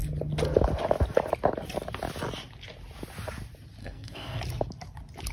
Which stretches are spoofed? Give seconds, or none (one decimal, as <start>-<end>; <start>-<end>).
3.8-4.4